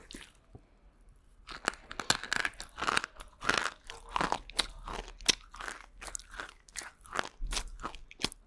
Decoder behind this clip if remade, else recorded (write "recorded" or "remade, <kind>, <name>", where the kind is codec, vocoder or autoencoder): recorded